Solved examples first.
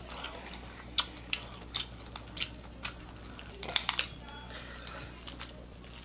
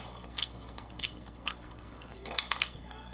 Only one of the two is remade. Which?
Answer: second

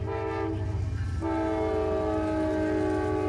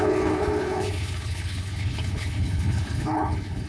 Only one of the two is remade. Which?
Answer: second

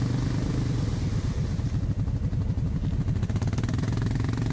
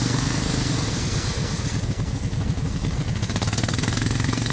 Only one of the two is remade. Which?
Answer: second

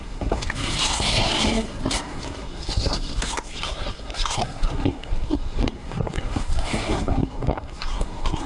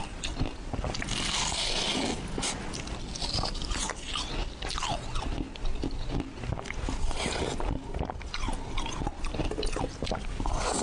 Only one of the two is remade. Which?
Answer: first